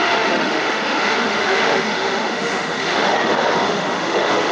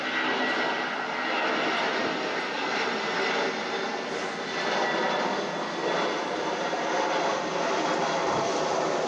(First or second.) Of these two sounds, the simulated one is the first